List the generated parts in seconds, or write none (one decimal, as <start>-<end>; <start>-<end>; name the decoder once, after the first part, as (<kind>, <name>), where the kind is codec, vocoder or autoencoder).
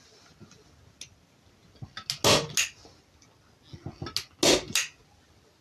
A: none